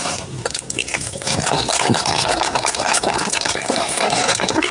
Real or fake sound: fake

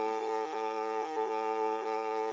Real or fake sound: fake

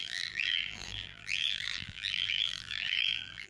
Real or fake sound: fake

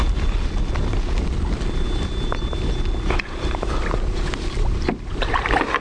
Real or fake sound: real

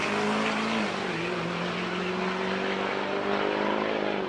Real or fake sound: real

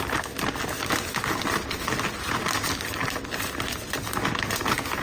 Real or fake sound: real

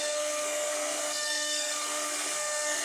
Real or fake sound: fake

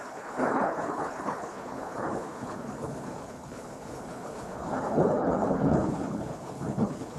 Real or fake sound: fake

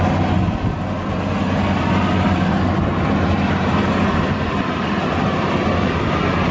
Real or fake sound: real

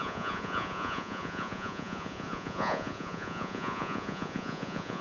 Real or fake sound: fake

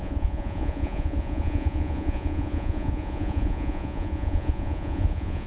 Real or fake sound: fake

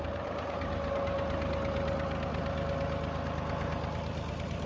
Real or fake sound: real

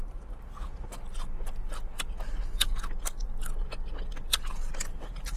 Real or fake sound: real